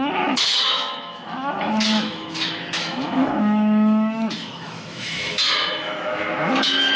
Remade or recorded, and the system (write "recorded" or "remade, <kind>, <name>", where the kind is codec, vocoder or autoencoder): remade, autoencoder, DAC-VAE